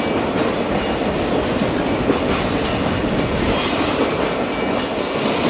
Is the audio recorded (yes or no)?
yes